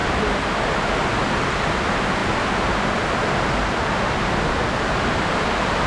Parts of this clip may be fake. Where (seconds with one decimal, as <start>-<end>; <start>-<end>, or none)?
none